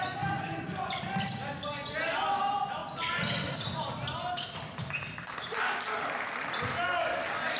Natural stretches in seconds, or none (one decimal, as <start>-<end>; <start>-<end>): 0.0-7.6